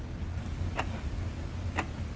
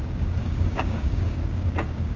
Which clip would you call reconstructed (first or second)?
second